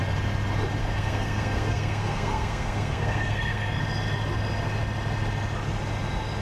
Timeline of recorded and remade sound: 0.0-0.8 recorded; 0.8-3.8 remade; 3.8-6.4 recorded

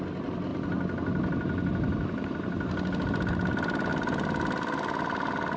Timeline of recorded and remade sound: 0.0-5.6 recorded

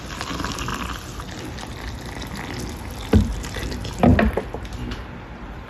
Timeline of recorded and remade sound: 0.0-5.7 recorded

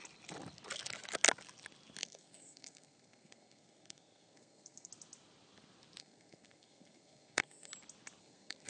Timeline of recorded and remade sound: 0.0-2.0 recorded; 2.0-4.9 remade; 4.9-6.0 recorded; 6.0-7.7 remade; 7.7-8.2 recorded; 8.2-8.7 remade

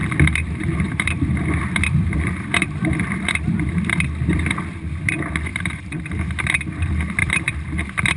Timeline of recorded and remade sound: 0.0-4.0 remade; 4.0-5.5 recorded; 5.5-6.0 remade; 6.0-7.2 recorded; 7.2-8.2 remade